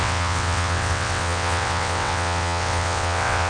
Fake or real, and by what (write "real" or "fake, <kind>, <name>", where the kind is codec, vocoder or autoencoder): fake, vocoder, WaveNeXt